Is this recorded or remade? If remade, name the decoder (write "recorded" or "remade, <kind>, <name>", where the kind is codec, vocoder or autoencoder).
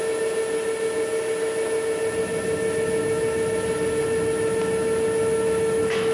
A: recorded